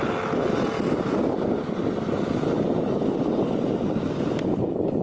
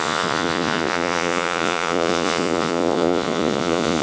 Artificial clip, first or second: second